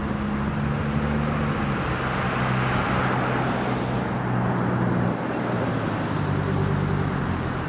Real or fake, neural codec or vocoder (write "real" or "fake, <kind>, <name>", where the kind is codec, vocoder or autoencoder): real